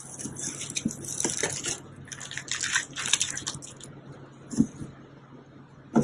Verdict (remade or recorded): recorded